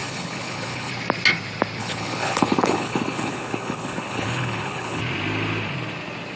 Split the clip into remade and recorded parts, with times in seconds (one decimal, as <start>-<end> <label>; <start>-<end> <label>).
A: 0.0-0.9 remade; 0.9-1.8 recorded; 1.8-5.0 remade; 5.0-6.4 recorded